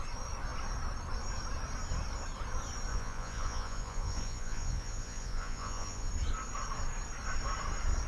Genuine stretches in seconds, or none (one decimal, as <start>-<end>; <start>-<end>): 0.0-2.9; 6.1-8.1